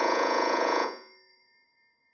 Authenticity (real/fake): fake